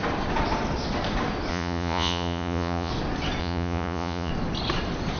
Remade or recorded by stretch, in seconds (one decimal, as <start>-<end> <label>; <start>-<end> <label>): 0.0-1.5 recorded; 1.5-2.9 remade; 2.9-3.4 recorded; 3.4-4.3 remade; 4.3-5.2 recorded